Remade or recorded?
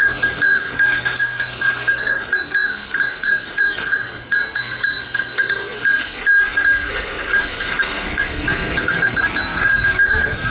remade